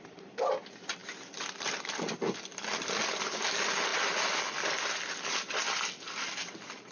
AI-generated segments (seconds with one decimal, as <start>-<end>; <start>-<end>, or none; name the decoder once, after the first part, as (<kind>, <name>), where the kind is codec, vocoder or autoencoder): none